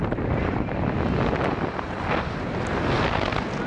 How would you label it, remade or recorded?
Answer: recorded